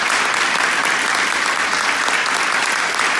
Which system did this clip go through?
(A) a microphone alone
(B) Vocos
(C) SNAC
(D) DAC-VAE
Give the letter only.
A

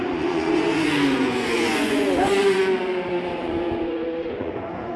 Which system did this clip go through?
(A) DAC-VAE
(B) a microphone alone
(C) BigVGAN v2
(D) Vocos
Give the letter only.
D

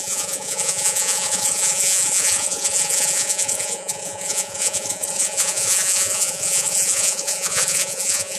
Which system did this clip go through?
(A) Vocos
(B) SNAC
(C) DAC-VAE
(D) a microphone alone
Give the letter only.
A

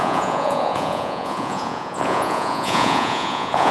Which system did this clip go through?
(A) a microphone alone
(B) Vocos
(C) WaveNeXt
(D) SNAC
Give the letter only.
B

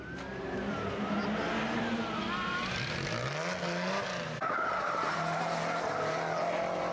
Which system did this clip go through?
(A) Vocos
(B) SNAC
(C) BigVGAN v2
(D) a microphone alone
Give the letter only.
D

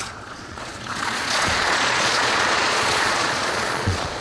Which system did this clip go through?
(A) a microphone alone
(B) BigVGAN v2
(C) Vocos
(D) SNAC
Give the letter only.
C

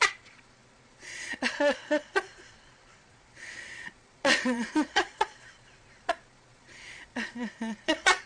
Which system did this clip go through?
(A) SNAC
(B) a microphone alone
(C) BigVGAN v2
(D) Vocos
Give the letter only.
D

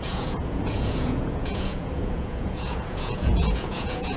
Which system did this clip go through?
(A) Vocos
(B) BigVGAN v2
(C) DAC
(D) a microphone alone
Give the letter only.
A